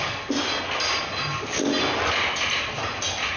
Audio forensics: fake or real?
real